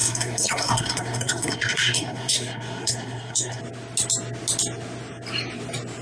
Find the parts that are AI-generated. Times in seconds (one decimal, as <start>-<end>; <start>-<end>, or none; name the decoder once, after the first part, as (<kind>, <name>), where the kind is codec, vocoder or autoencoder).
0.0-3.6 (codec, SNAC)